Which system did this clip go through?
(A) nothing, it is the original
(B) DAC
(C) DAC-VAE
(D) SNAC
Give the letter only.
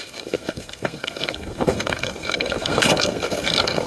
D